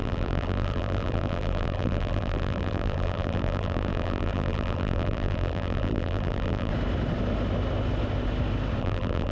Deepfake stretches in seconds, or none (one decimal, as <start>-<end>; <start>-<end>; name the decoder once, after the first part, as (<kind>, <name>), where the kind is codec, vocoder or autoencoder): 0.0-6.7 (vocoder, BigVGAN v2); 8.8-9.3